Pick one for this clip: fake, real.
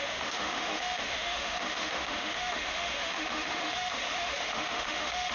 fake